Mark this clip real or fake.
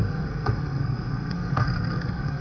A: fake